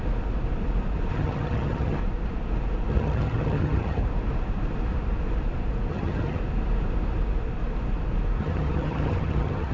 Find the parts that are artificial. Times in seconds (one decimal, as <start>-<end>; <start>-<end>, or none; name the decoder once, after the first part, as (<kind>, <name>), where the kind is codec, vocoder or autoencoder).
1.1-2.0 (vocoder, HiFi-GAN); 2.9-4.0; 5.9-6.4; 8.4-9.7